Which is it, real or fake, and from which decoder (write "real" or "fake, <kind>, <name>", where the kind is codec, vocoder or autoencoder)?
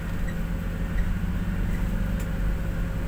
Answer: real